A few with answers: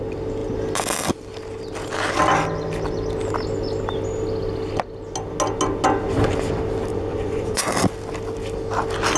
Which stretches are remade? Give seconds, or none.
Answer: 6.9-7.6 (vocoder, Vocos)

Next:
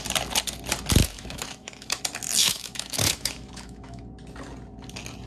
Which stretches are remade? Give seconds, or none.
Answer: 1.0-2.0 (autoencoder, DAC-VAE); 2.4-4.0

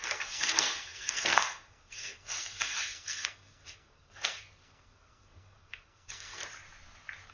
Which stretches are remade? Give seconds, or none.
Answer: 0.0-6.4 (codec, SNAC)

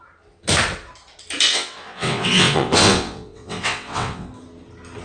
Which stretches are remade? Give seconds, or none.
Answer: 1.5-4.3 (vocoder, WaveNeXt)

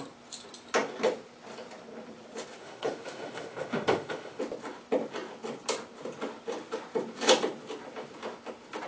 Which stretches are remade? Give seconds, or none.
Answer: 2.6-4.4 (autoencoder, DAC-VAE)

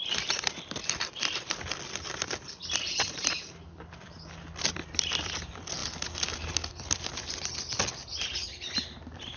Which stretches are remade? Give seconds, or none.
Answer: 0.0-8.0 (vocoder, BigVGAN v2); 8.7-9.4